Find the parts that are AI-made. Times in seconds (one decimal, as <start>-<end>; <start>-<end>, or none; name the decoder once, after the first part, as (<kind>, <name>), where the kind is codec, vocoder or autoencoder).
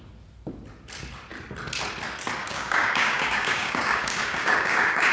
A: 2.4-5.1 (codec, DAC)